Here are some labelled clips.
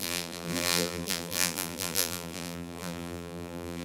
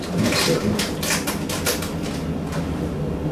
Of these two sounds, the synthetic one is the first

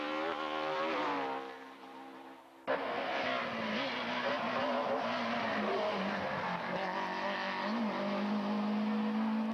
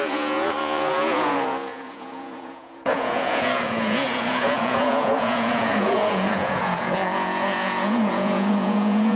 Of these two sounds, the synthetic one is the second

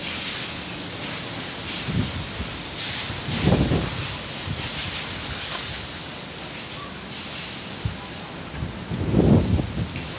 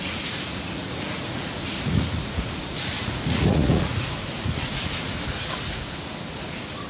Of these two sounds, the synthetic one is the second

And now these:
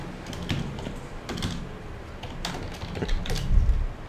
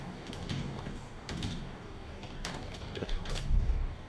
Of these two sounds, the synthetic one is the second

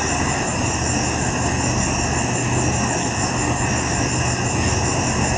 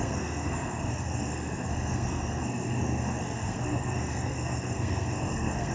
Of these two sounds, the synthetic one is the second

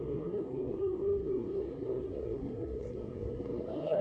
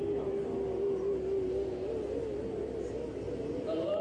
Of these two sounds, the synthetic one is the first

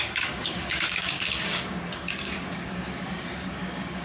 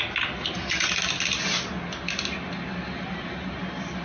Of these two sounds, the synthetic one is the first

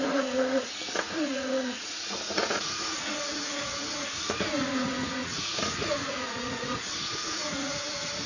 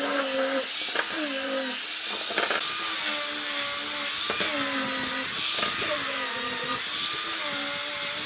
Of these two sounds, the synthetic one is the first